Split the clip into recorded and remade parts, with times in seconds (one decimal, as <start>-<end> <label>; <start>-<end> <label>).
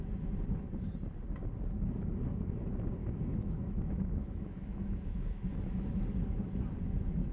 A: 0.0-3.0 recorded; 3.0-6.0 remade; 6.0-7.3 recorded